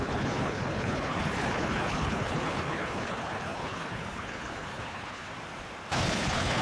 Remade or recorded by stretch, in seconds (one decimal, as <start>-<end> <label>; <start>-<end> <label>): 0.0-5.3 remade; 5.3-5.9 recorded; 5.9-6.6 remade